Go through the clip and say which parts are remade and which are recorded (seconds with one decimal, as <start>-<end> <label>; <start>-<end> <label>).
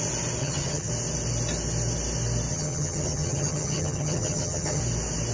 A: 0.0-0.4 recorded; 0.4-0.9 remade; 0.9-2.5 recorded; 2.5-4.8 remade; 4.8-5.3 recorded